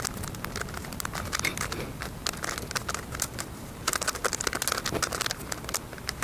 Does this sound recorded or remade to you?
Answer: recorded